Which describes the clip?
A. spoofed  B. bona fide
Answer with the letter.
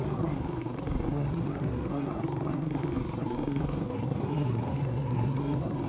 A